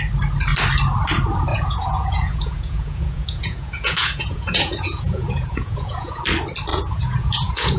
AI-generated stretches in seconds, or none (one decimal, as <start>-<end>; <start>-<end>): 1.5-6.2; 6.7-7.8